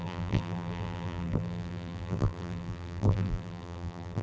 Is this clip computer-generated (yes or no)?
yes